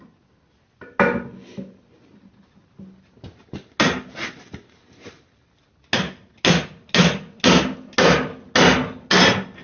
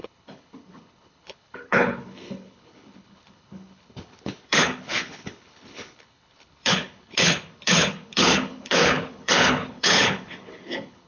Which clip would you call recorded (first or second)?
first